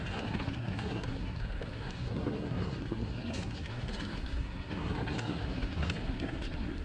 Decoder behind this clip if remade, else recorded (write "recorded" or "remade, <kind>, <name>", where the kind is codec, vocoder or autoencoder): remade, codec, SNAC